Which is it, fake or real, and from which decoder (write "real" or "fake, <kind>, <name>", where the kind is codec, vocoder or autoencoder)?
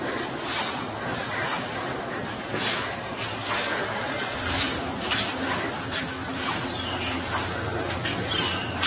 fake, vocoder, BigVGAN v2